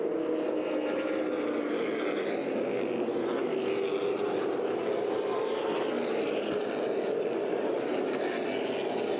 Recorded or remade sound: recorded